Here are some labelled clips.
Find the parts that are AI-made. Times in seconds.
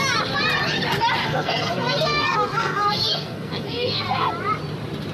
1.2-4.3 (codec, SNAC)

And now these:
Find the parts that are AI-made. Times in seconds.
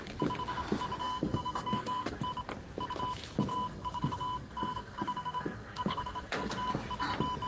1.0-2.2 (codec, SNAC); 3.5-6.7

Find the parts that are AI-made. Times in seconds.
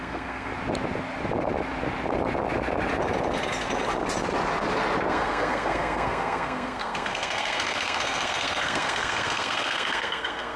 0.0-0.5 (codec, SNAC); 5.1-10.6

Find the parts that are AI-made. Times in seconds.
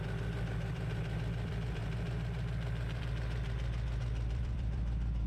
0.0-1.8 (vocoder, BigVGAN v2); 3.0-5.3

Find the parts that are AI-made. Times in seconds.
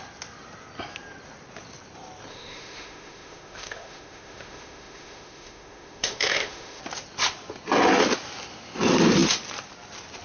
2.3-6.8 (autoencoder, DAC-VAE)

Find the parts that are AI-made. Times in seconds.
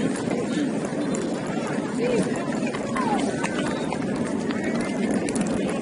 none